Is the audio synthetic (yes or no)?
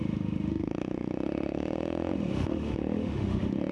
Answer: yes